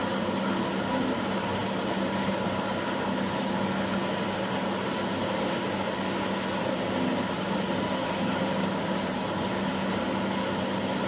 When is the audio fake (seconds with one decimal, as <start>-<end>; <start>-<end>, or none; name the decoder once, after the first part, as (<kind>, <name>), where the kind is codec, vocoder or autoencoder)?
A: none